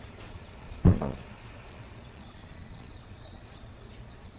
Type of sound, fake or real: fake